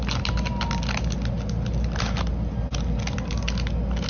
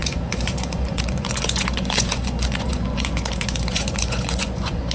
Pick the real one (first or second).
first